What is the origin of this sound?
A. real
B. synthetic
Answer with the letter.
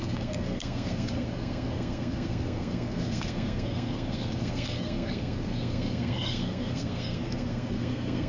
B